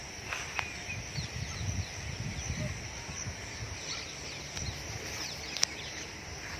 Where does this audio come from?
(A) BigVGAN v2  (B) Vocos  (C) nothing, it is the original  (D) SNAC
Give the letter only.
C